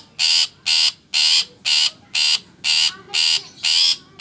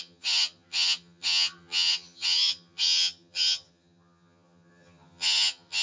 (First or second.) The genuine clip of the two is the first